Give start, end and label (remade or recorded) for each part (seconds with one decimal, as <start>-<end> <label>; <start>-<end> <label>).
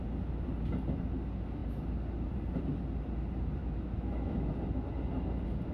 0.0-3.6 recorded; 3.6-4.5 remade; 4.5-5.7 recorded